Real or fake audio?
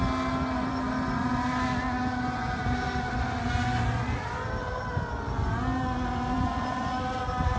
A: real